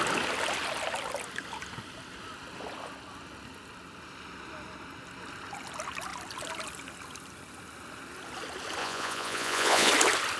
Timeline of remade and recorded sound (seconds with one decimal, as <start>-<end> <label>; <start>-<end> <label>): 0.0-8.8 recorded; 8.8-9.9 remade; 9.9-10.4 recorded